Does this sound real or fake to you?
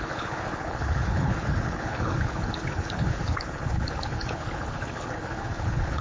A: fake